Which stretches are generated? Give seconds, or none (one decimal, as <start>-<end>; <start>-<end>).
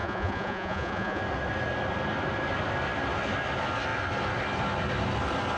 0.0-1.2